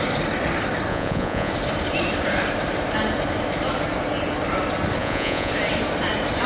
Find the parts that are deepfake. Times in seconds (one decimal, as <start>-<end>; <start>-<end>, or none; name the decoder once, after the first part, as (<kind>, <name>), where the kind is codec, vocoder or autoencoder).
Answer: 0.9-1.5 (vocoder, Vocos); 5.0-5.5